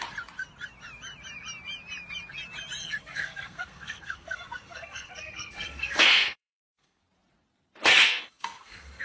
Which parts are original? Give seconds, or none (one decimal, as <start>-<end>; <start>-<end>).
0.0-2.8; 7.0-7.9